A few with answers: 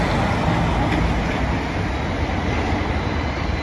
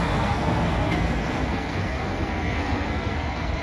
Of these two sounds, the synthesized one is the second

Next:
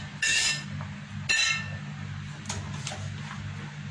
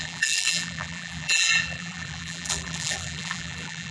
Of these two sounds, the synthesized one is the second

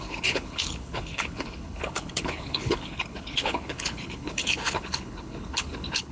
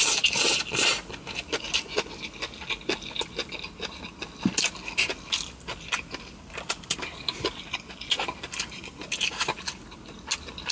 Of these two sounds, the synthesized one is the first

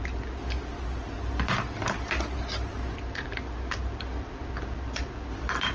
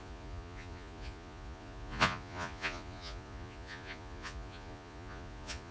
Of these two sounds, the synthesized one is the second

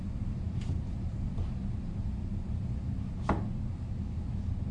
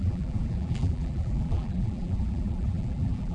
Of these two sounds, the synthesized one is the second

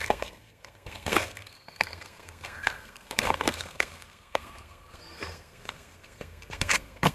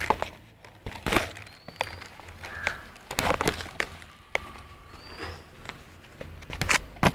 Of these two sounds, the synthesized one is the first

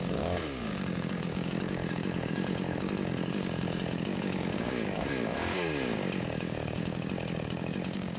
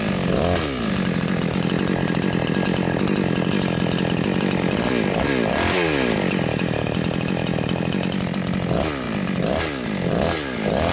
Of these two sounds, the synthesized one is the first